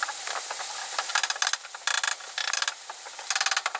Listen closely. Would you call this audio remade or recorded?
recorded